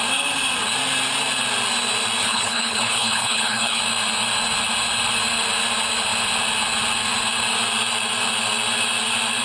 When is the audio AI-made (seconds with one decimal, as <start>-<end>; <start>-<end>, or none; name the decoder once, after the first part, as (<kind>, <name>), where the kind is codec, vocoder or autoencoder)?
2.2-3.8 (codec, HILCodec)